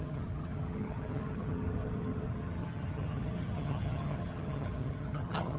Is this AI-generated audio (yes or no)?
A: yes